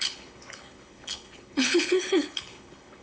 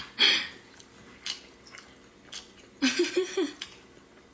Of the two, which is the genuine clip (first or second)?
second